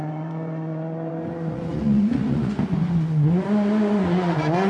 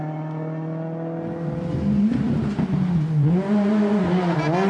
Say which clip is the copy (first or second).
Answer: first